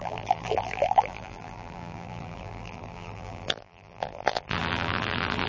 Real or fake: fake